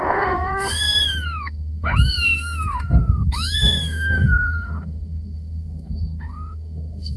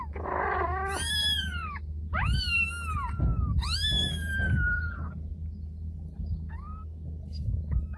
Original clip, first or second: second